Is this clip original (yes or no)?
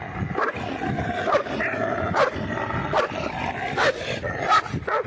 yes